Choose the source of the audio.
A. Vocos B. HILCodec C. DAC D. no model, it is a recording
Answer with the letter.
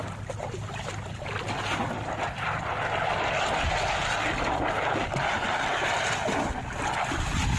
D